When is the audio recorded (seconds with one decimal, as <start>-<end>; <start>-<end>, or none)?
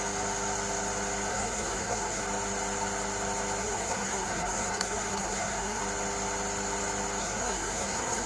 0.0-1.3; 2.2-3.6; 5.8-7.2